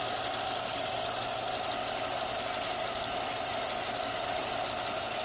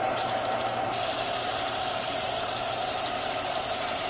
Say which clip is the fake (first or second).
second